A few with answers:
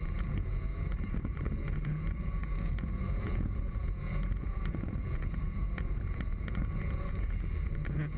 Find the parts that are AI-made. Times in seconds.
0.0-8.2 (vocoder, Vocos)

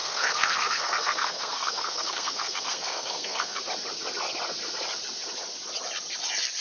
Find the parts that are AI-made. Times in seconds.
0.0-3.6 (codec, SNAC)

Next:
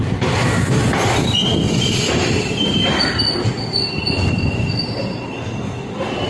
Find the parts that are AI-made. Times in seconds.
2.2-3.5 (vocoder, BigVGAN v2)

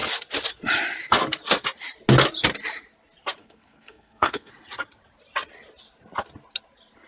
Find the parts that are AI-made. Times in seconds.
3.4-4.5 (codec, SNAC)